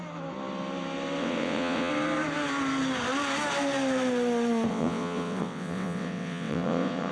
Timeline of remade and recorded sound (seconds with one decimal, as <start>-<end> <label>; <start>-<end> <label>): 0.0-1.2 recorded; 1.2-1.9 remade; 1.9-4.7 recorded; 4.7-7.1 remade